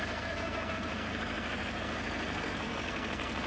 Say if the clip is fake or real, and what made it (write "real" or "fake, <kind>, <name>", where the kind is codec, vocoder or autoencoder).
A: fake, codec, SNAC